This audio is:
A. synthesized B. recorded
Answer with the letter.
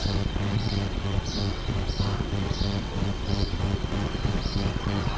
A